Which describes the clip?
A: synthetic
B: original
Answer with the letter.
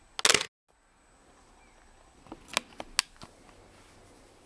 B